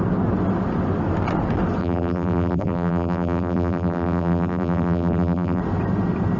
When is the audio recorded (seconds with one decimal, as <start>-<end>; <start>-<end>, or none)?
0.0-1.8; 5.6-6.4